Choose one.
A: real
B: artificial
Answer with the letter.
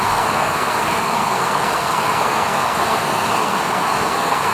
B